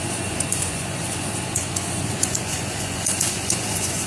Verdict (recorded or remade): remade